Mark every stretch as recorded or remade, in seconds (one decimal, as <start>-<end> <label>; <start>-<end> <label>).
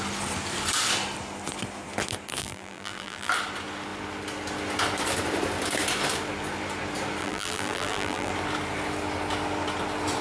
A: 0.0-2.4 recorded; 2.4-3.3 remade; 3.3-7.2 recorded; 7.2-8.3 remade; 8.3-10.2 recorded